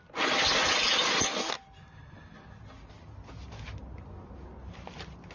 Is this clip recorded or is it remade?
recorded